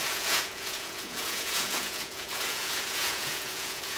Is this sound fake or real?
fake